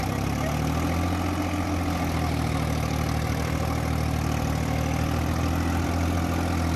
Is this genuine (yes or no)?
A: yes